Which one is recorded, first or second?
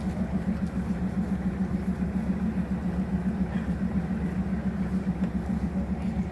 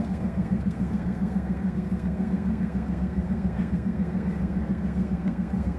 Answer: first